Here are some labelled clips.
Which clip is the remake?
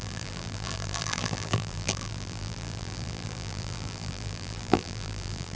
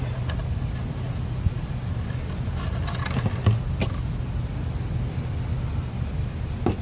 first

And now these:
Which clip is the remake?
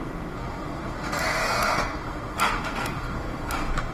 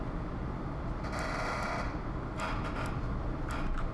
first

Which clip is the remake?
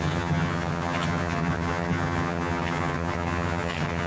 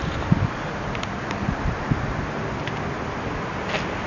first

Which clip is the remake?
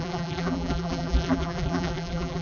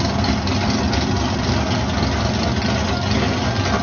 first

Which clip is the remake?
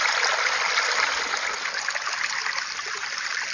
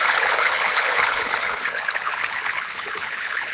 second